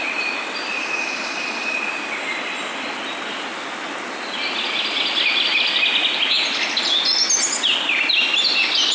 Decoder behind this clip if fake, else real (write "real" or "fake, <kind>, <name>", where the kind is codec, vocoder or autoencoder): real